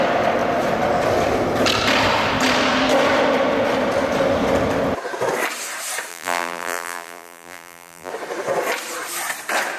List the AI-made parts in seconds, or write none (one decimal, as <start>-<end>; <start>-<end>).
6.1-8.1